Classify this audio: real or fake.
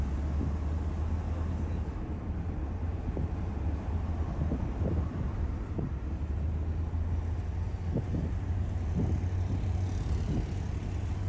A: real